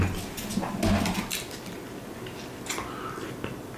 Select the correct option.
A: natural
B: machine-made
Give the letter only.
A